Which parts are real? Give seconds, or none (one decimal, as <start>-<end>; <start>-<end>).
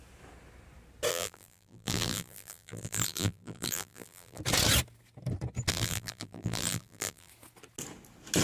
0.0-1.1; 4.4-5.7; 7.3-8.4